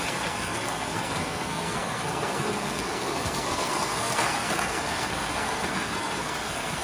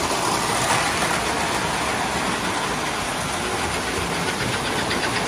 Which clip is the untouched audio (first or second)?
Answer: second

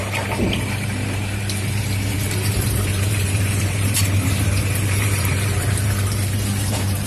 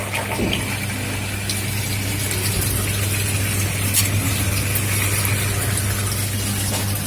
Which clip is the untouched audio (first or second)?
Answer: second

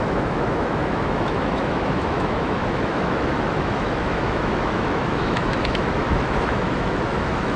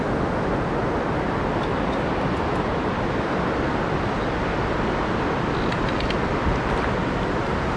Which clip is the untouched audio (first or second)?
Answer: second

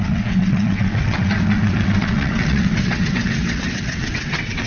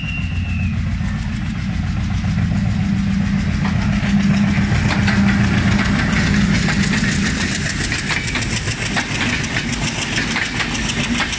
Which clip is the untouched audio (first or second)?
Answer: second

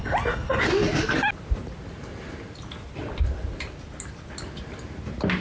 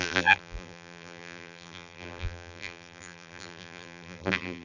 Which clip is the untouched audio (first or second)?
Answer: first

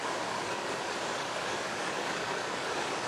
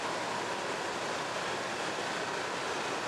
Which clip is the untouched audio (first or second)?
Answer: second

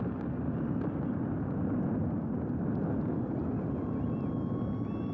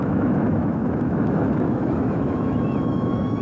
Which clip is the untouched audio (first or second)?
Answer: first